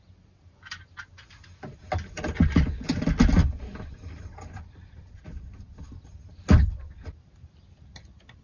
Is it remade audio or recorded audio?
recorded